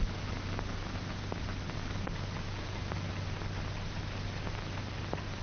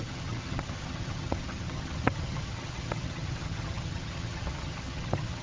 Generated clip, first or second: second